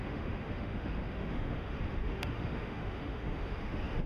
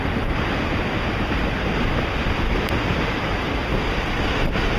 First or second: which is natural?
second